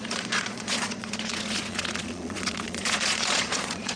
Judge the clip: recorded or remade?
remade